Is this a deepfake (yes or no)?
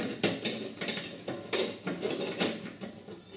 no